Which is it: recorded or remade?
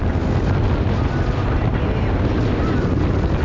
recorded